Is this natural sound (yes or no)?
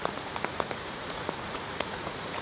no